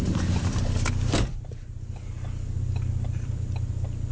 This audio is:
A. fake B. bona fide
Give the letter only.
A